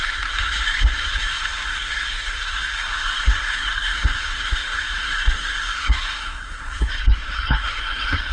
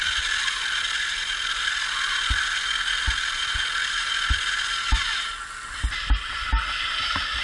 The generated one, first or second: first